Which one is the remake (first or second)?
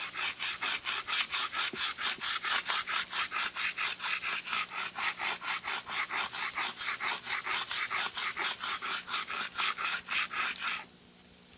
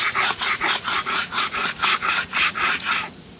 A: second